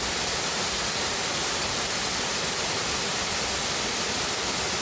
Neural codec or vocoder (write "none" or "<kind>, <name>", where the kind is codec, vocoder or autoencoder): none